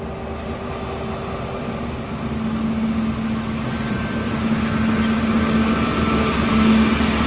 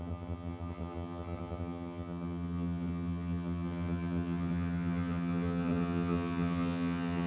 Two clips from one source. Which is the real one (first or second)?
first